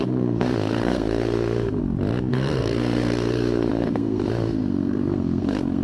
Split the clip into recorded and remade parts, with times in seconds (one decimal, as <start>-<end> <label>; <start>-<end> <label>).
0.0-1.8 remade; 1.8-2.3 recorded; 2.3-5.8 remade